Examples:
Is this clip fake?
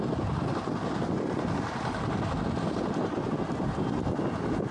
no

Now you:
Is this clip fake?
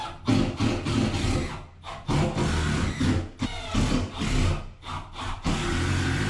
no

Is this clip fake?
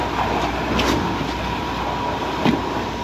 no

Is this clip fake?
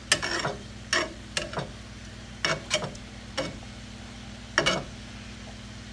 no